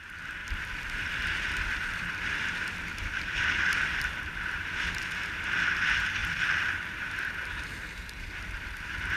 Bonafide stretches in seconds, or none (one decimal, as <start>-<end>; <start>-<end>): 0.0-0.4; 2.1-2.9; 4.3-6.2; 6.7-9.2